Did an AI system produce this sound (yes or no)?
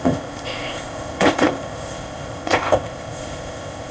yes